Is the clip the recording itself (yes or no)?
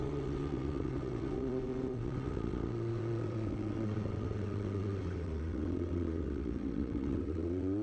no